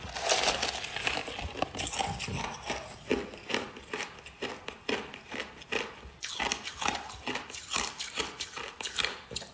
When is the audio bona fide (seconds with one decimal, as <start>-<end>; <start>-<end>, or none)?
0.0-9.5